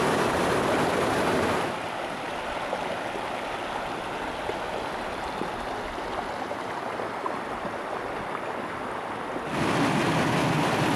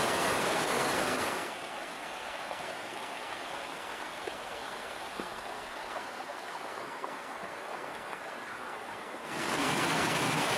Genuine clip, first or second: first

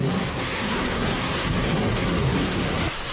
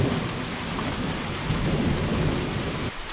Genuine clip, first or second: second